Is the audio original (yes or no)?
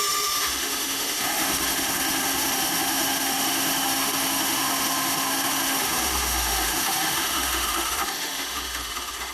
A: no